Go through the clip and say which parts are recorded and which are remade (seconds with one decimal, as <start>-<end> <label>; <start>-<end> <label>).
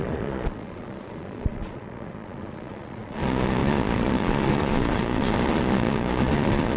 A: 0.0-6.8 remade